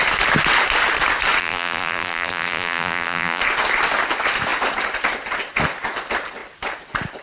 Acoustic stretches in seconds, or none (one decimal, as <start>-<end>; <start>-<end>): 0.0-1.4; 3.4-7.2

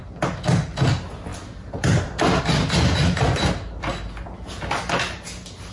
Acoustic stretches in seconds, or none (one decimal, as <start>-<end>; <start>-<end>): 0.0-1.3; 2.4-5.7

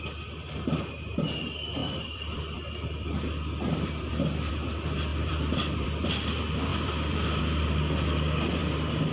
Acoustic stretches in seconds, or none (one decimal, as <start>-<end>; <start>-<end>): 0.0-1.8; 4.5-5.1; 6.1-6.7; 7.4-8.6

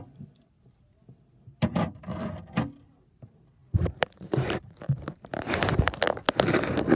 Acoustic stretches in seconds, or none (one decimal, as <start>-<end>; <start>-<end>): 0.0-3.6; 5.8-6.9

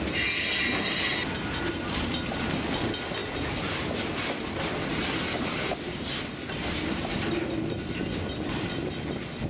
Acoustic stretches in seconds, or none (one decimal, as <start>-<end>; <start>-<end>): 0.0-9.5

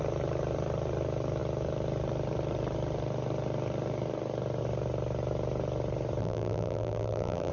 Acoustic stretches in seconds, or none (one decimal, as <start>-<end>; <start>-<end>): 0.0-6.2

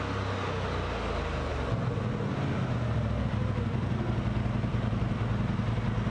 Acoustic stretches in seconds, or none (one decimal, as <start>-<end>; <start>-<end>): 0.0-4.7; 5.6-6.1

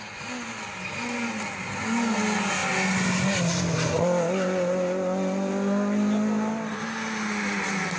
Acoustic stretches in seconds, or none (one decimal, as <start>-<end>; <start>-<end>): 0.0-8.0